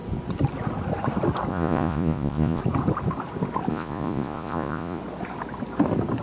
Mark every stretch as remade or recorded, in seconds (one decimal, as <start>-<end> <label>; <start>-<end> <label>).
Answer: 0.0-1.5 recorded; 1.5-2.6 remade; 2.6-3.7 recorded; 3.7-5.0 remade; 5.0-6.2 recorded